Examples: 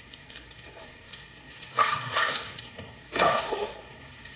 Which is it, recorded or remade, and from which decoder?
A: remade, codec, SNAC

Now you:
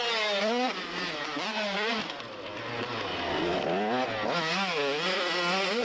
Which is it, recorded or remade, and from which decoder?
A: recorded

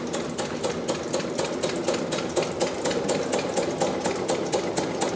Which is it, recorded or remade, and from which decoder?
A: recorded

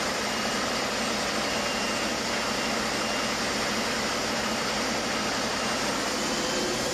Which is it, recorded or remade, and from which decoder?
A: recorded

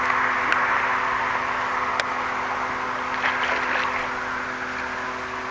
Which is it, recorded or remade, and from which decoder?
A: recorded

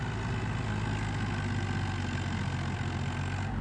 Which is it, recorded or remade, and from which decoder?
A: recorded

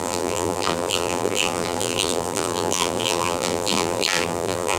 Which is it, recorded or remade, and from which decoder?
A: remade, vocoder, BigVGAN v2